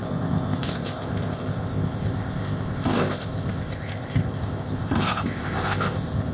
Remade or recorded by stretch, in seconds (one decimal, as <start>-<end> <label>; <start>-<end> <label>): 0.0-6.3 remade